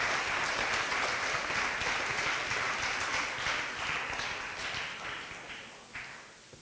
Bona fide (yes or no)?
yes